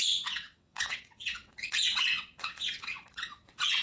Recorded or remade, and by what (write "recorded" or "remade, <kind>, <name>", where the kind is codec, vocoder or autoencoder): remade, vocoder, WaveNeXt